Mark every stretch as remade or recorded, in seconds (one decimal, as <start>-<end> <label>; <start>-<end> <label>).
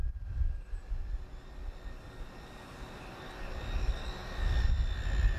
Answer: 0.0-5.4 recorded